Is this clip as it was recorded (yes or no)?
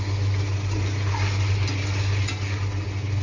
yes